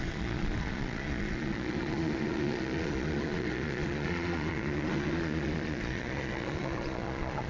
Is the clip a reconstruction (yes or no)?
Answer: yes